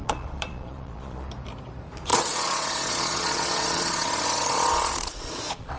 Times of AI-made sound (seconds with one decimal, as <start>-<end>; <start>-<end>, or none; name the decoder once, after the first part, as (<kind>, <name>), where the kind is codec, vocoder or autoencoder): 0.0-1.3 (vocoder, Vocos); 2.1-5.8